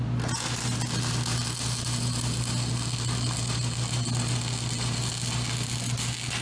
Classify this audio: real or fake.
real